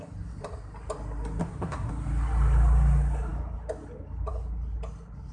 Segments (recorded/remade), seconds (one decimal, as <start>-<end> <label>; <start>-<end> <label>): 0.0-1.4 recorded; 1.4-1.9 remade; 1.9-5.3 recorded